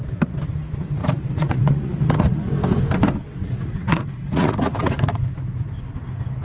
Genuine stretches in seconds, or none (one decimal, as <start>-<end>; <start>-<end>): 0.0-1.0; 2.5-3.4; 5.2-6.4